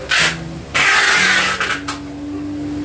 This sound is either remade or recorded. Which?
recorded